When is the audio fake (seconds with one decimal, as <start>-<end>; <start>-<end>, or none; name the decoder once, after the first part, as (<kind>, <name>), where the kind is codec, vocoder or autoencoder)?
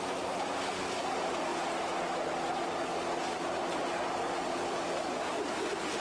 none